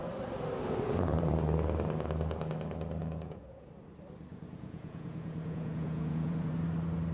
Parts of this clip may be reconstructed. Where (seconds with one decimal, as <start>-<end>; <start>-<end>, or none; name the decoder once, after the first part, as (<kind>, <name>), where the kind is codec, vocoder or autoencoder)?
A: 3.0-3.7 (vocoder, Vocos); 4.3-6.5